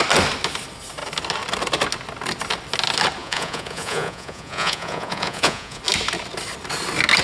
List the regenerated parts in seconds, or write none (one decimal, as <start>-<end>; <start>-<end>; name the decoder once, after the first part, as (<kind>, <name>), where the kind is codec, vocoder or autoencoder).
3.2-5.8 (vocoder, Vocos)